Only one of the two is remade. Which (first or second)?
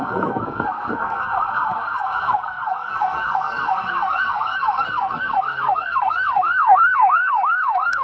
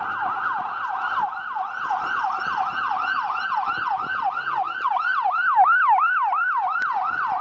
first